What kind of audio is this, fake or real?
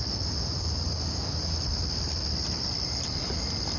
fake